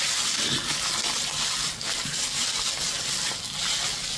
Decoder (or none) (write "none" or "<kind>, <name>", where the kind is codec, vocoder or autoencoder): none